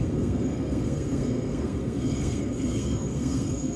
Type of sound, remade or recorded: remade